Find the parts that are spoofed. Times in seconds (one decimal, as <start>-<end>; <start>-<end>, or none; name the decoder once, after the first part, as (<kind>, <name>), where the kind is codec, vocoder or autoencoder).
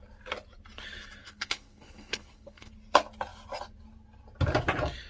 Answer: 1.2-2.7 (codec, HILCodec)